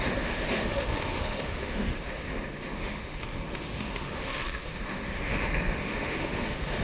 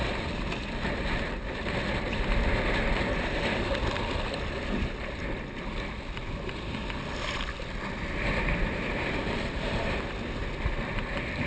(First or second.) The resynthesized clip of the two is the first